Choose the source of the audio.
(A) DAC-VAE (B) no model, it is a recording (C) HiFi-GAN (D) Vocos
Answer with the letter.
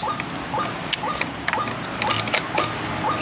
B